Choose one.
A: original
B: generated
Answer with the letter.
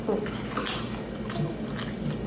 A